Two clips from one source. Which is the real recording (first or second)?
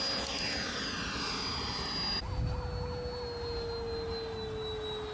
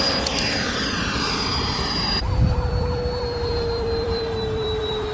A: first